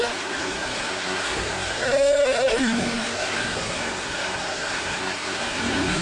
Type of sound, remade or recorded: remade